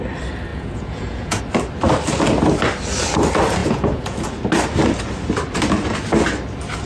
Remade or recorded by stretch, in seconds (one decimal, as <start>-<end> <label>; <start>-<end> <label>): 0.0-0.5 recorded; 0.5-1.4 remade; 1.4-3.6 recorded; 3.6-4.3 remade; 4.3-6.9 recorded